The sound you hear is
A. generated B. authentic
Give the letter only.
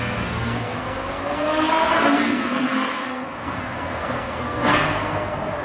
A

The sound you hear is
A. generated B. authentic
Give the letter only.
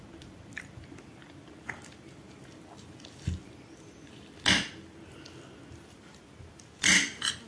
B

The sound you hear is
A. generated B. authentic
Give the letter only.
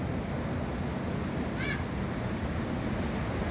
B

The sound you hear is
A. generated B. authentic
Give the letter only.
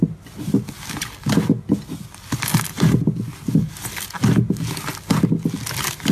B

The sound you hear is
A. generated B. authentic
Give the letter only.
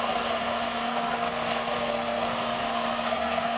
A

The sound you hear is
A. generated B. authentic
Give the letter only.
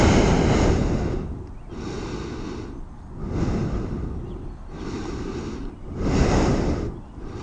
B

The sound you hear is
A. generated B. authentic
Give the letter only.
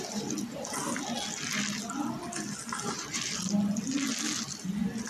B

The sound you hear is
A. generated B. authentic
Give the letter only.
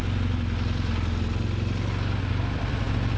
B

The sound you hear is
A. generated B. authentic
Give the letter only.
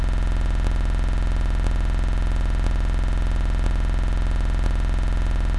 B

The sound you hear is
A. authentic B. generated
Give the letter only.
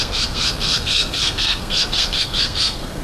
B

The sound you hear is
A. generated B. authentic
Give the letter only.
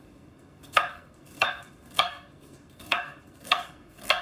A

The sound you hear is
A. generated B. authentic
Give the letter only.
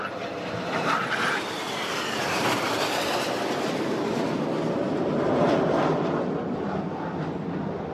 B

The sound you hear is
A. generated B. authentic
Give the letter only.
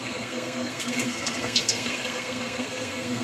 A